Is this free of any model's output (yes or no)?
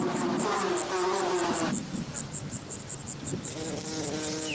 yes